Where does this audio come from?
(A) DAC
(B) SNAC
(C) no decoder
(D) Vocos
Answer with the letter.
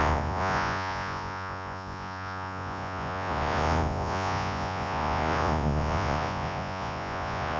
D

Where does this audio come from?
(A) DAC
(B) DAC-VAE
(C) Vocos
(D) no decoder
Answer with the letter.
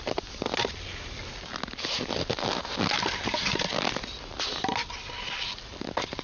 D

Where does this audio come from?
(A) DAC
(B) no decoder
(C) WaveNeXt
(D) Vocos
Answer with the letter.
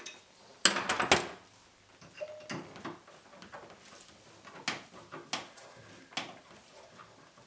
B